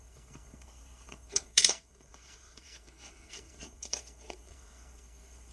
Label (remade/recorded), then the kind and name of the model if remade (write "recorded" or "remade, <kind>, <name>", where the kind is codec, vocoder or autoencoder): remade, codec, SNAC